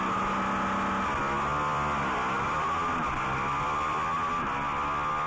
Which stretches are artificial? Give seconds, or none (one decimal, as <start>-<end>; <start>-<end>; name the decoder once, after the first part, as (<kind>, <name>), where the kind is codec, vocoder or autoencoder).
1.5-4.3 (vocoder, BigVGAN v2)